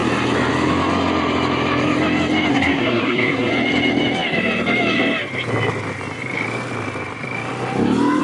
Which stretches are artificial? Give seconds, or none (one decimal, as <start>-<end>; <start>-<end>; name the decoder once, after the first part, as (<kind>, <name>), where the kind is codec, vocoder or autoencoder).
2.5-3.5 (codec, SNAC)